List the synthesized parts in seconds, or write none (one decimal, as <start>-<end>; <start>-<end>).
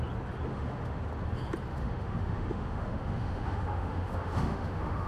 0.5-1.0; 1.7-5.1